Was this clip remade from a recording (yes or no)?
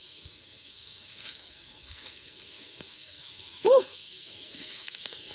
yes